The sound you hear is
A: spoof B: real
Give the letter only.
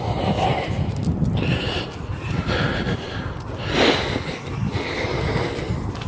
B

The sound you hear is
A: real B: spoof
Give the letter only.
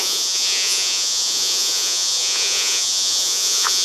B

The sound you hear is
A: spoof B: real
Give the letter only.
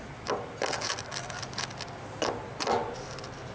B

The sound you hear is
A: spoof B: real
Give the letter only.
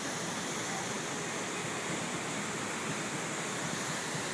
B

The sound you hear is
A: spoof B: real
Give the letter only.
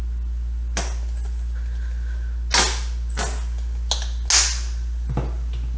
B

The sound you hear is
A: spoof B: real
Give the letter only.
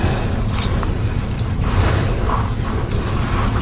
B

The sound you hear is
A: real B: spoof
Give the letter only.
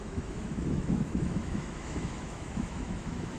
B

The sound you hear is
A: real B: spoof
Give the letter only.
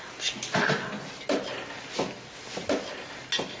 A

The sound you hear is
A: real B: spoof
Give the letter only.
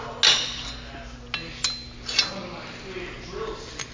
A